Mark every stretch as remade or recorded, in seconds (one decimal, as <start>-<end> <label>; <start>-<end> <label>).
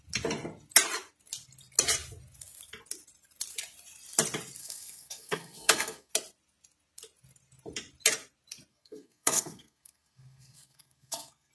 0.0-4.6 recorded; 4.6-6.1 remade; 6.1-8.7 recorded; 8.7-11.5 remade